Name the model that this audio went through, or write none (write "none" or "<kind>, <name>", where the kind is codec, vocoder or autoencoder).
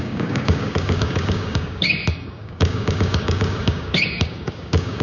codec, DAC